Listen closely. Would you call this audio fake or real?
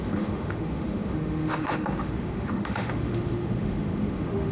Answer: fake